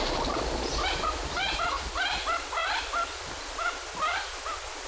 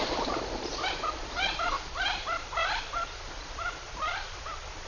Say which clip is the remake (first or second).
second